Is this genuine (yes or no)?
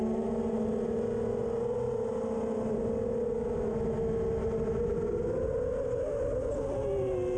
yes